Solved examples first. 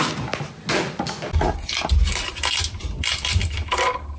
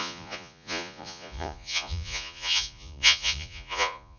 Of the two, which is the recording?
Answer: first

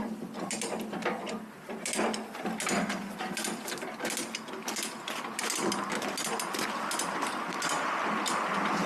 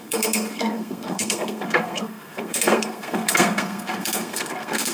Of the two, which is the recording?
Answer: first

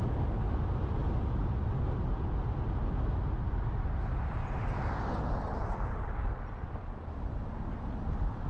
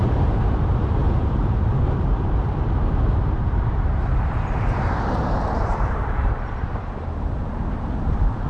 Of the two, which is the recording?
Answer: first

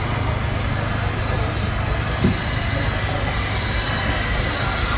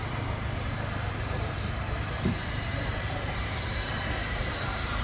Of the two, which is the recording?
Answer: first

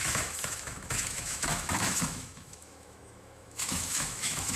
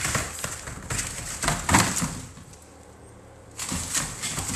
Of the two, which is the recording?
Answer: second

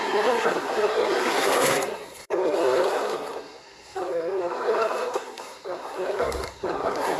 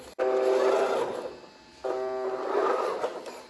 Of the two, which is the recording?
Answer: second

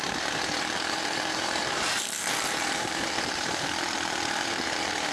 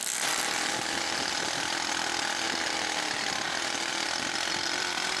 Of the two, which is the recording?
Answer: second